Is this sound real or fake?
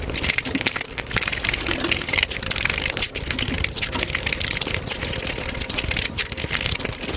real